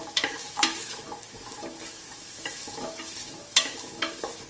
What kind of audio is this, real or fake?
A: fake